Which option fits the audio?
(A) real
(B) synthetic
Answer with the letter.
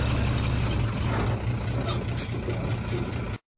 A